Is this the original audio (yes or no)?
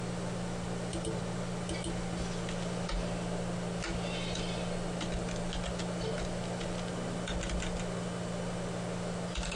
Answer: yes